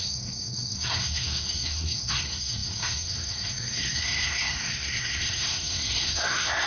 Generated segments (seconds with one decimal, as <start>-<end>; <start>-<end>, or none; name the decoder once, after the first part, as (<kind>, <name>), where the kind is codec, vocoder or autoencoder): 0.0-6.7 (codec, SNAC)